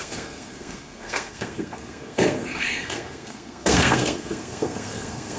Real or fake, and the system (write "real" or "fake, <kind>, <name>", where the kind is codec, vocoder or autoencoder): fake, codec, SNAC